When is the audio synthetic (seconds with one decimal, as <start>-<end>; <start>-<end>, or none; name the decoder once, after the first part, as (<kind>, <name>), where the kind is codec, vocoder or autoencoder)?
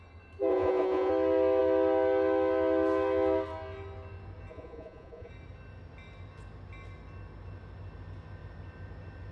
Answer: 0.5-1.1 (vocoder, Vocos); 4.5-5.3